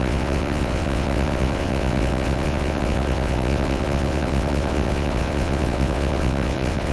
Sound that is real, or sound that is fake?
fake